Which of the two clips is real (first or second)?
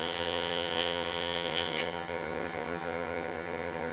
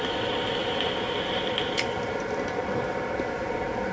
second